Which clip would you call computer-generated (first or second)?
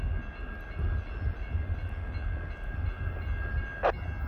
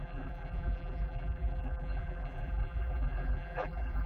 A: second